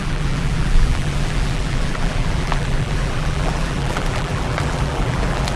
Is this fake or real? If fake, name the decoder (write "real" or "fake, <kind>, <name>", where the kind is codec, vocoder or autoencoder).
fake, vocoder, BigVGAN v2